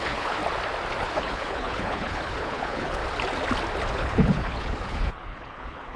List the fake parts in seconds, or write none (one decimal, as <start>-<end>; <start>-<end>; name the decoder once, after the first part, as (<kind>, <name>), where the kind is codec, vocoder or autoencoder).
0.0-0.4 (codec, HILCodec); 1.0-3.0; 3.9-6.0